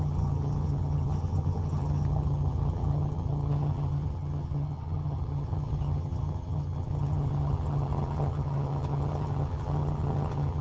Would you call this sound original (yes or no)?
no